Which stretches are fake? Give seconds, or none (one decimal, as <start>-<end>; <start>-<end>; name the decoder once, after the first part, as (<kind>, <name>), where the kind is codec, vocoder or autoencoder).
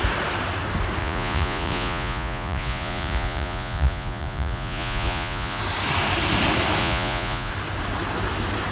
1.0-5.6 (vocoder, Vocos); 6.8-7.5